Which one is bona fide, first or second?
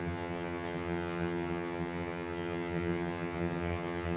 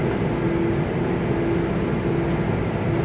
second